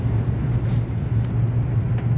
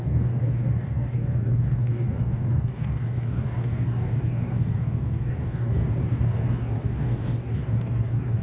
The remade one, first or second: second